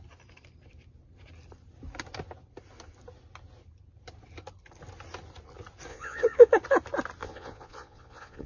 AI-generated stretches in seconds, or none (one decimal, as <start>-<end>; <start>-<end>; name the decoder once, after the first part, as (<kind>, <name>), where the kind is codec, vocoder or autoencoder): 5.9-6.5 (vocoder, Vocos); 7.2-8.5